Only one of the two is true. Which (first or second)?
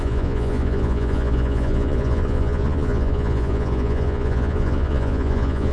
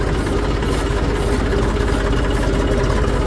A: second